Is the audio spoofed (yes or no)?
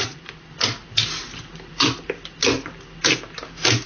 no